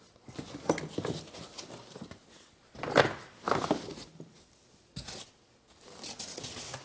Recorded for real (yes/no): yes